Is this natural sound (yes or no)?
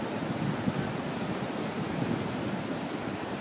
yes